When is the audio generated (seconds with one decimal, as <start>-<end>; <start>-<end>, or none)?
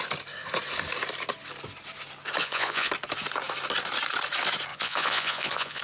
2.4-2.9; 4.7-5.8